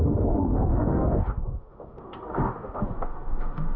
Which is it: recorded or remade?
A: remade